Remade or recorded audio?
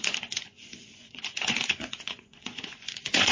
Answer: remade